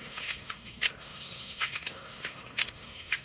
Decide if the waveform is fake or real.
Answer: fake